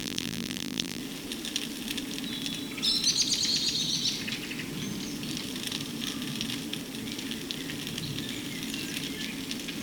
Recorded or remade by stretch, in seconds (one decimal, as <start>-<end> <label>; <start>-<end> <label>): 0.0-1.0 remade; 1.0-9.8 recorded